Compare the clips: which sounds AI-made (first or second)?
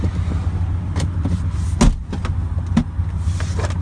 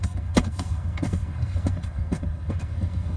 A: second